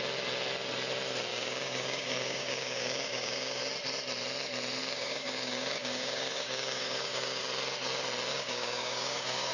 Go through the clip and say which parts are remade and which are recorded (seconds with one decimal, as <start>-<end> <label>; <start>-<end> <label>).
0.0-1.3 recorded; 1.3-3.6 remade; 3.6-4.8 recorded; 4.8-7.4 remade; 7.4-8.3 recorded; 8.3-9.5 remade